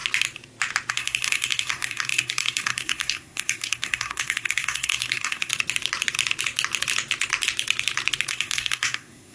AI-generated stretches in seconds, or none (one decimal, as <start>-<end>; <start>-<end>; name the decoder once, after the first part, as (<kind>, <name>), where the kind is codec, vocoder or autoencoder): 0.9-5.5 (codec, SNAC); 8.3-9.3